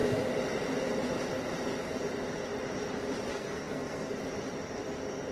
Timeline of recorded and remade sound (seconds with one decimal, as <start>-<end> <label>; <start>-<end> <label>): 0.0-3.3 recorded; 3.3-4.1 remade; 4.1-5.3 recorded